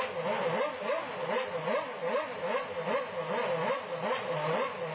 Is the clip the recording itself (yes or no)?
yes